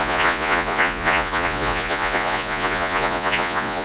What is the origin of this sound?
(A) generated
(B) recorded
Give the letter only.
A